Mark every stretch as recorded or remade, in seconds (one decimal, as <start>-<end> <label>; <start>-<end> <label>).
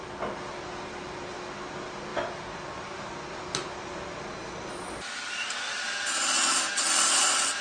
0.0-7.6 recorded